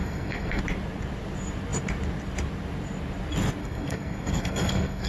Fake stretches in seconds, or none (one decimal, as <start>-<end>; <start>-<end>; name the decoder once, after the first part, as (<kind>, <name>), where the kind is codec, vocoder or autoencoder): 0.0-0.6 (codec, SNAC); 3.6-5.1